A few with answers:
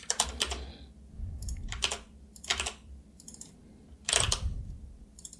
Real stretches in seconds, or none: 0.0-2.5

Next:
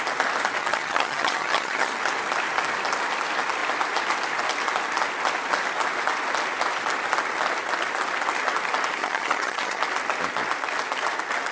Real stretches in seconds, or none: 0.0-0.6; 2.0-9.0; 9.8-11.5

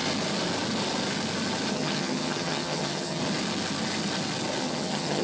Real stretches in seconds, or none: 0.0-1.7; 3.2-4.6

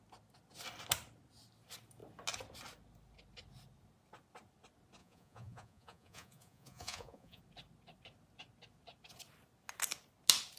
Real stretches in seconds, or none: 0.0-5.0; 7.4-10.6